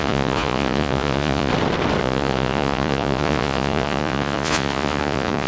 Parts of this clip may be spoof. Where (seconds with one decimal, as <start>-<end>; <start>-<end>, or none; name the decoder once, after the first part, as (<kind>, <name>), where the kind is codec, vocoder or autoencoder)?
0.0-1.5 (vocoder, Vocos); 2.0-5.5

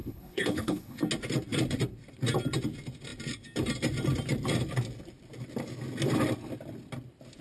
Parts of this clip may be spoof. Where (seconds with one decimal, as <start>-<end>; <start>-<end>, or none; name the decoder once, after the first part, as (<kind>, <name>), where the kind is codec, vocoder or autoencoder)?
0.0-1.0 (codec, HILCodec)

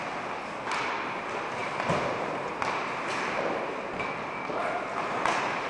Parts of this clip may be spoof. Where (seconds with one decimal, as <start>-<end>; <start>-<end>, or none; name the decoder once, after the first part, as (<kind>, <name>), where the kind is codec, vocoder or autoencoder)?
none

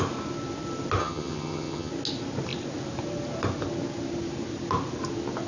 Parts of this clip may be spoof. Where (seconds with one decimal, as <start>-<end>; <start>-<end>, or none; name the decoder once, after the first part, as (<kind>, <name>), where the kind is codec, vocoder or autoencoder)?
1.0-1.9 (vocoder, HiFi-GAN)

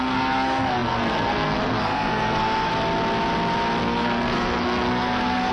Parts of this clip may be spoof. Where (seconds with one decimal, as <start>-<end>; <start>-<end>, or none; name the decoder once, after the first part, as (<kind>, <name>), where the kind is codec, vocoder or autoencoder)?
0.0-2.7 (codec, SNAC); 3.8-5.5

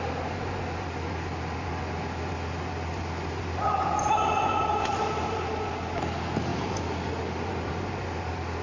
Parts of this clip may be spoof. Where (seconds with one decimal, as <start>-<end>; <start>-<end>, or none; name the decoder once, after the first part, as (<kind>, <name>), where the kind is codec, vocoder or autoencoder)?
none